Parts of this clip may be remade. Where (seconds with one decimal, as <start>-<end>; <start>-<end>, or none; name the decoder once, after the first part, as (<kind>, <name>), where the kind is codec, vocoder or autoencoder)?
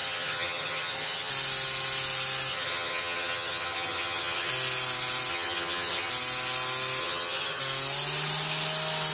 0.0-1.3 (vocoder, HiFi-GAN); 2.5-4.5; 5.3-6.1; 7.0-7.6